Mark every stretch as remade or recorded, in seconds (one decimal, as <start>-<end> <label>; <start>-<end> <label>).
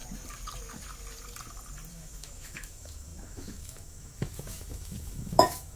0.0-1.9 recorded; 1.9-5.8 remade